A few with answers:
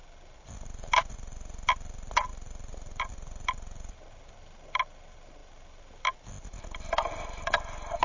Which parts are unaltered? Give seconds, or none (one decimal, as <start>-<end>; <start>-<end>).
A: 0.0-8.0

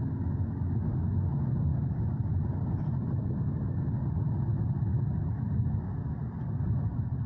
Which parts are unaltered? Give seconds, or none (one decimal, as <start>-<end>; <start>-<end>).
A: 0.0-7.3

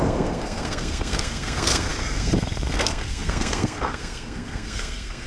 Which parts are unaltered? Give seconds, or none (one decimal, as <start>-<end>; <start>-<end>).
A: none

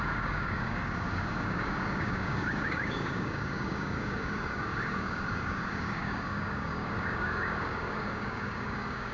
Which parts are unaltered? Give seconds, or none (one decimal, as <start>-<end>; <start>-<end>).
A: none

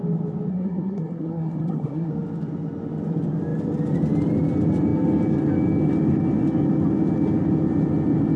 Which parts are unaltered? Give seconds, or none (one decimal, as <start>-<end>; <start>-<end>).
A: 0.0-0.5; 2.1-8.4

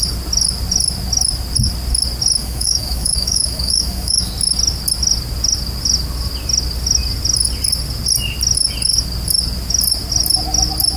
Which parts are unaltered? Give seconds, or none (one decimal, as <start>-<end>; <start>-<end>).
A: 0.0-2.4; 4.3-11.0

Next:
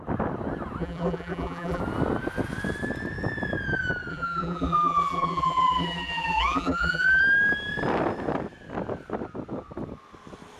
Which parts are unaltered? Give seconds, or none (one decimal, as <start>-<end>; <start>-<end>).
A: 0.0-0.8; 1.8-4.1; 7.2-10.6